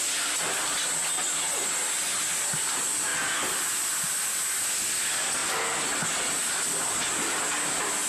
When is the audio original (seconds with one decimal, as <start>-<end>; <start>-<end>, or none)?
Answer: 0.0-8.1